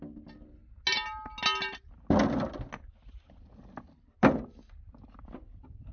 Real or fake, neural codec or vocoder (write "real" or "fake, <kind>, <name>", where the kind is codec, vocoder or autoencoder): real